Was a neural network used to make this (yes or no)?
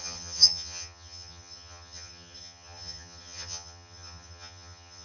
yes